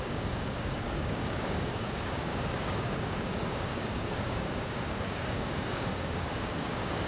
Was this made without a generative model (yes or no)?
no